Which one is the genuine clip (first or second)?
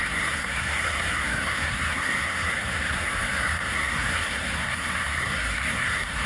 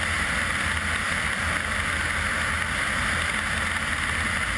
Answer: second